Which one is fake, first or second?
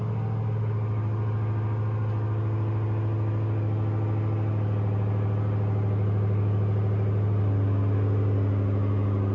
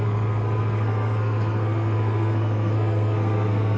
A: second